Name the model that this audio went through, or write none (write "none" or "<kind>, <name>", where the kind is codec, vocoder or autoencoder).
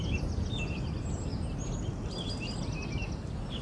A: none